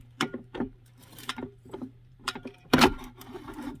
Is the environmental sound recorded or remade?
remade